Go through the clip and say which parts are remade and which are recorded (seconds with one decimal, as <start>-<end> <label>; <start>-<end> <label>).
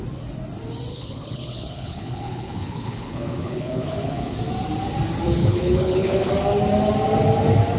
0.0-0.9 recorded; 0.9-4.4 remade; 4.4-5.4 recorded; 5.4-6.3 remade; 6.3-7.8 recorded